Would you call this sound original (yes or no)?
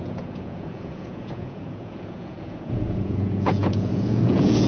no